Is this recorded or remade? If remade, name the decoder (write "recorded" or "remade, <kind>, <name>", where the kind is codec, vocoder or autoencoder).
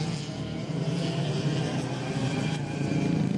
remade, vocoder, BigVGAN v2